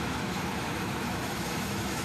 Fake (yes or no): yes